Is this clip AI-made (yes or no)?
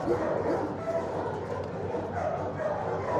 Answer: no